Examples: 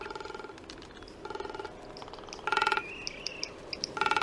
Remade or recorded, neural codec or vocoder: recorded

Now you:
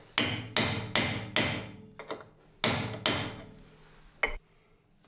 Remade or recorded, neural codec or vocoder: recorded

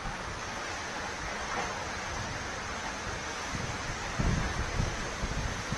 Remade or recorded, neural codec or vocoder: recorded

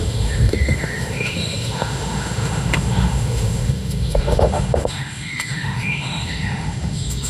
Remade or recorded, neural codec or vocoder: remade, autoencoder, DAC-VAE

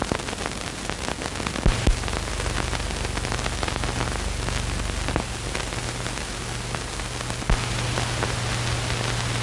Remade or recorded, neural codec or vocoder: recorded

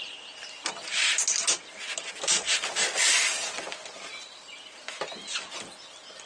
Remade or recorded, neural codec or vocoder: recorded